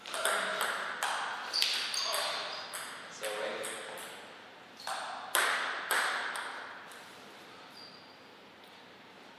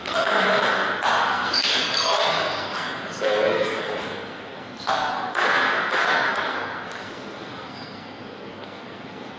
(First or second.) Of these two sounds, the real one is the first